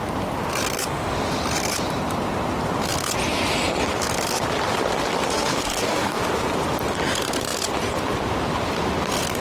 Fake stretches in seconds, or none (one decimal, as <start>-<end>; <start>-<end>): 5.5-6.2